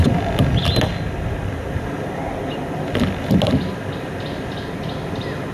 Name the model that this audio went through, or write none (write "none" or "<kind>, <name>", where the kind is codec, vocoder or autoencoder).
none